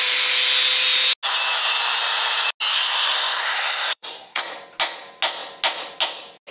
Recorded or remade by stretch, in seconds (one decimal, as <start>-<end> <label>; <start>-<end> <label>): 0.0-2.7 recorded; 2.7-4.4 remade; 4.4-6.5 recorded